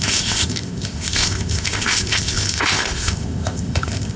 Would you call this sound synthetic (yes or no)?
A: yes